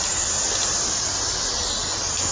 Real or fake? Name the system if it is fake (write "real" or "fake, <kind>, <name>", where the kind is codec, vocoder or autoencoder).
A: real